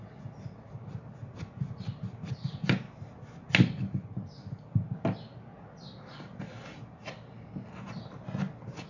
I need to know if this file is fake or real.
real